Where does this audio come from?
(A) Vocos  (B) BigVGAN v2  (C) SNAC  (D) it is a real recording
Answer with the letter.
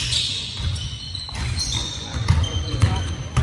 A